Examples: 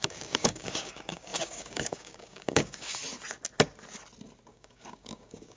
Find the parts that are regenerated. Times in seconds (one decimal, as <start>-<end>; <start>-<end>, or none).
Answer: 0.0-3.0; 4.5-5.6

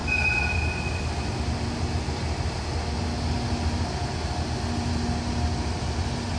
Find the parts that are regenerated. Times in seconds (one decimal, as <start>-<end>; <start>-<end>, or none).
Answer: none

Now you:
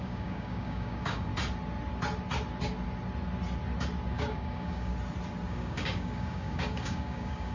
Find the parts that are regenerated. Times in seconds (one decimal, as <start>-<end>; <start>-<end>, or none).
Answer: 0.0-1.3; 4.1-4.9; 5.5-7.5

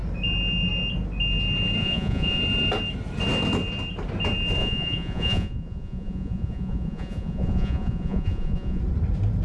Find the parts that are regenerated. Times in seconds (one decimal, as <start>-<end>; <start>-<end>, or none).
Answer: 1.8-2.4; 4.6-8.8

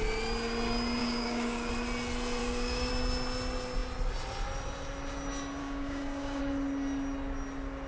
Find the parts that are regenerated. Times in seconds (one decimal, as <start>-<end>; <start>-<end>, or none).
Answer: 1.0-1.7; 2.4-2.9; 5.6-6.4

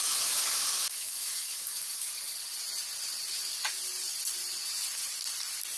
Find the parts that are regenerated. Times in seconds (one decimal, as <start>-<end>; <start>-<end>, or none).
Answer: 0.0-2.1

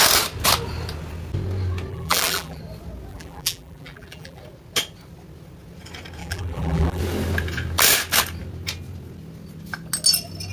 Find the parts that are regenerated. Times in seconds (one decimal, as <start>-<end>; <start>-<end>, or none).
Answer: 1.9-2.6; 3.1-4.4; 6.2-7.0

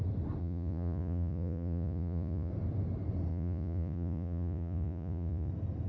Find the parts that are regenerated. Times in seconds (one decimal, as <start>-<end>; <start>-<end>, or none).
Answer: 0.4-2.5; 3.3-5.5